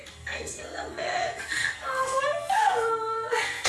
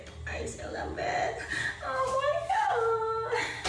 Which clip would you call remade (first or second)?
first